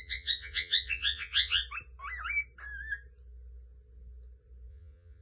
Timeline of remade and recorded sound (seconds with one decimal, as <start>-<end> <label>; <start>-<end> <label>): 0.0-1.6 remade; 1.6-4.7 recorded; 4.7-5.2 remade

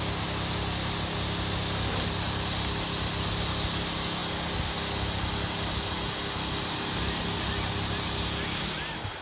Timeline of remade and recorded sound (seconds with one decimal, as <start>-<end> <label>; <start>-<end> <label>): 0.0-9.2 recorded

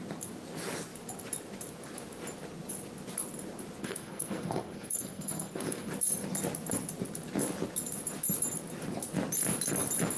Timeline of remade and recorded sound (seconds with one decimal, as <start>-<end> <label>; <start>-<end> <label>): 0.0-3.8 recorded; 3.8-5.9 remade; 5.9-10.2 recorded